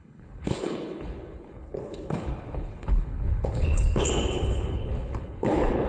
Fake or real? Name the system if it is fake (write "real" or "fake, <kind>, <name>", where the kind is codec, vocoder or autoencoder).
fake, codec, HILCodec